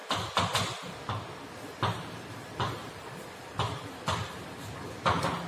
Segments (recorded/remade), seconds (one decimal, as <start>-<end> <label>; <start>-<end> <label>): 0.0-5.5 recorded